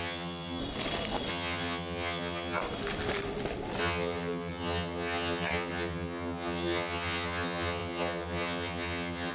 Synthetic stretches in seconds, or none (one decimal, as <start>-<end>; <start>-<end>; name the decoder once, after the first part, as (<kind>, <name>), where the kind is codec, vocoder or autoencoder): 0.0-0.6 (vocoder, HiFi-GAN); 1.3-2.6; 3.8-9.3